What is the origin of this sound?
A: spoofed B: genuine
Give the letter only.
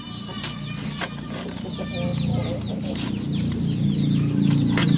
B